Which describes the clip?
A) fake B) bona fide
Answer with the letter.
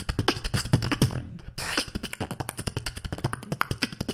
B